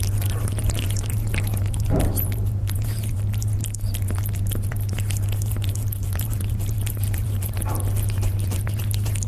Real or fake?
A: fake